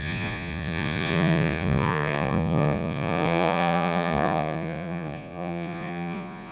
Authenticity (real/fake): fake